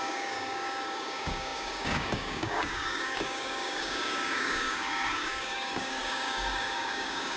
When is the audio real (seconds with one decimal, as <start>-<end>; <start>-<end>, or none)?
none